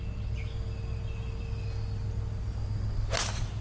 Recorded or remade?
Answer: recorded